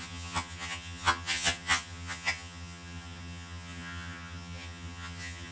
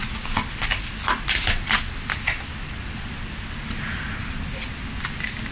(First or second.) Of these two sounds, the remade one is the first